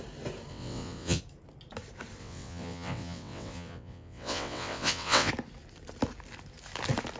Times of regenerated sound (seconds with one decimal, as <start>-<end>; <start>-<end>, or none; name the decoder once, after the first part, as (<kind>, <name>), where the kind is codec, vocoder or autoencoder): 0.5-1.2 (vocoder, WaveNeXt); 2.2-5.3

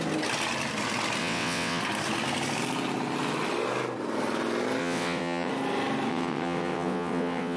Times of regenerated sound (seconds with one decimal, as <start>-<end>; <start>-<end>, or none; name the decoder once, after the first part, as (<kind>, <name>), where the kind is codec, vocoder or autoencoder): 1.2-1.8 (vocoder, WaveNeXt); 4.8-5.5; 6.1-7.6

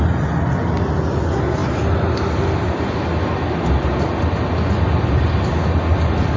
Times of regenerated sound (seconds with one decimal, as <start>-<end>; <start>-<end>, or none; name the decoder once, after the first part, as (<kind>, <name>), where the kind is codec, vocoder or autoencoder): none

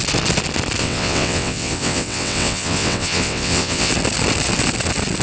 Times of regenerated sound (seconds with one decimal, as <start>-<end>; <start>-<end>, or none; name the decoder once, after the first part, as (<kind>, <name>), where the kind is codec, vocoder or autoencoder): 0.8-3.9 (vocoder, WaveNeXt)

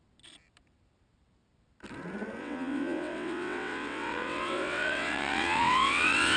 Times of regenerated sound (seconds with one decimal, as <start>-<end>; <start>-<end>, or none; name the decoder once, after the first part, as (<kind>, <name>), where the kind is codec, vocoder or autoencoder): 2.4-6.4 (vocoder, WaveNeXt)